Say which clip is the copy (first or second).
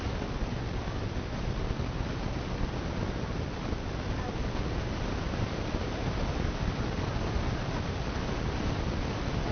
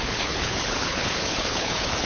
second